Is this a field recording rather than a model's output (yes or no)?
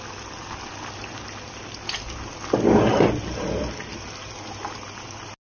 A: yes